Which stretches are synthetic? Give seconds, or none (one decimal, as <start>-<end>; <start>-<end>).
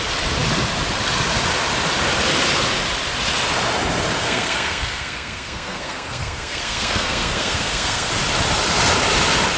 4.2-8.1